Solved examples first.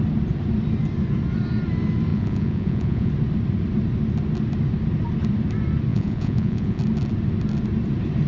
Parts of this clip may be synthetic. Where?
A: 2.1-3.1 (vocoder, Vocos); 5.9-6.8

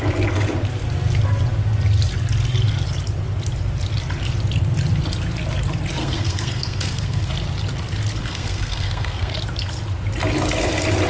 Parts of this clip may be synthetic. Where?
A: 6.0-7.3 (codec, SNAC); 8.2-9.3

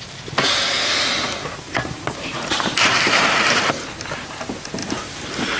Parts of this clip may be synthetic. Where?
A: 1.4-2.0 (vocoder, BigVGAN v2); 2.8-3.7; 4.8-5.6

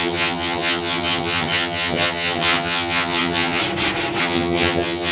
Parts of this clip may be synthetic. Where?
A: 0.0-3.6 (vocoder, HiFi-GAN); 4.2-5.1

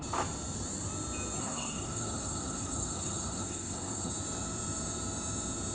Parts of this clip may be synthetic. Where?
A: 1.4-4.1 (codec, SNAC)

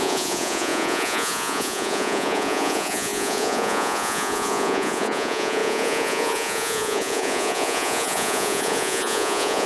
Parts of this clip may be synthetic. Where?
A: 0.0-9.7 (vocoder, Vocos)